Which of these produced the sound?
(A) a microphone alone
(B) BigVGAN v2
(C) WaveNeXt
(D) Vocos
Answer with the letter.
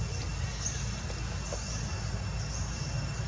A